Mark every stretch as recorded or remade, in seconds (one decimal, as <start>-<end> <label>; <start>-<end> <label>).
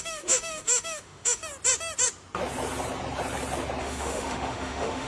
0.0-1.4 remade; 1.4-3.8 recorded; 3.8-5.1 remade